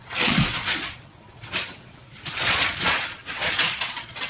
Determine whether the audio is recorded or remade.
remade